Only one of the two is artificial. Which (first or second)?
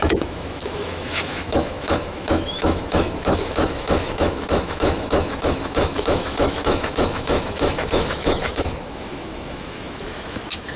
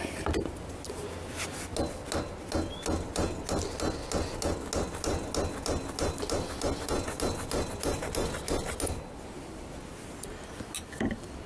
first